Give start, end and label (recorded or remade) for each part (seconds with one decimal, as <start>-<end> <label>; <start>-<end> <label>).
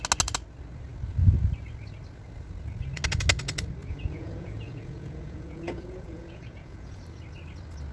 0.0-3.8 recorded; 3.8-7.0 remade; 7.0-7.9 recorded